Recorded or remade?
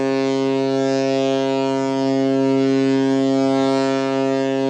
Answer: recorded